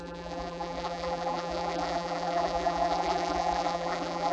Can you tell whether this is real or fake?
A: fake